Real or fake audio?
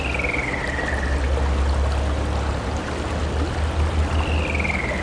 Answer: real